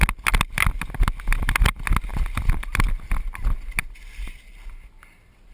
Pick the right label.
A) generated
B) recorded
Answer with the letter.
B